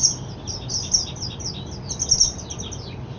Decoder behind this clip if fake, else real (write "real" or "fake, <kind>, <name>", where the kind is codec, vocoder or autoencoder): real